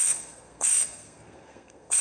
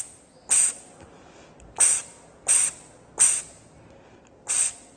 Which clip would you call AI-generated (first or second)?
first